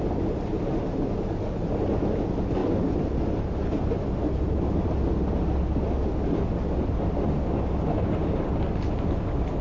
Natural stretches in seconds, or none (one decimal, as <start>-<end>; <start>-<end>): 0.0-9.6